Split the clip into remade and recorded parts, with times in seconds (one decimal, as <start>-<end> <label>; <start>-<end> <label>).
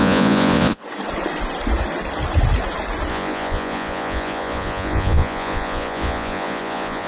0.0-0.8 remade; 0.8-3.1 recorded; 3.1-7.1 remade